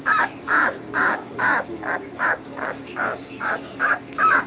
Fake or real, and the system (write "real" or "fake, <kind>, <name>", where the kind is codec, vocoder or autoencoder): fake, codec, DAC